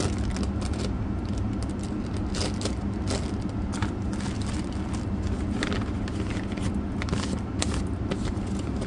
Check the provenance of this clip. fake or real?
real